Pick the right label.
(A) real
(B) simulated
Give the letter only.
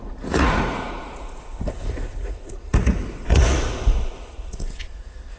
B